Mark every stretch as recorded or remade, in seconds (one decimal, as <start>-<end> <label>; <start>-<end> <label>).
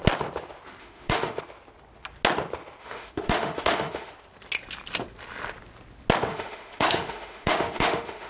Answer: 0.0-0.8 recorded; 0.8-1.4 remade; 1.4-2.8 recorded; 2.8-4.1 remade; 4.1-6.3 recorded; 6.3-8.3 remade